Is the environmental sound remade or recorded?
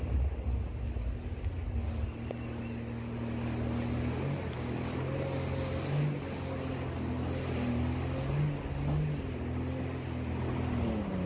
recorded